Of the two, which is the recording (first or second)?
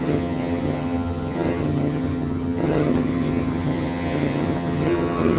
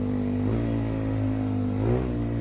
second